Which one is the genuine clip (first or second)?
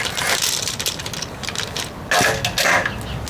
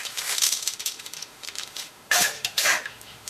first